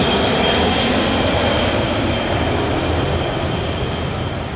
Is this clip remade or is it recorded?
recorded